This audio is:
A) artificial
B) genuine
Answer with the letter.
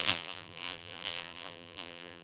A